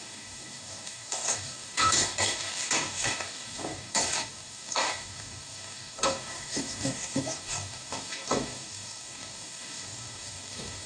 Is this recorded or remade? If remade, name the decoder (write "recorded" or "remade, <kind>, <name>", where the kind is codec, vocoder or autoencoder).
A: remade, codec, DAC